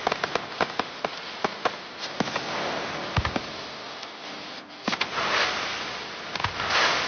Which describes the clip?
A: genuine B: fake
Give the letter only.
A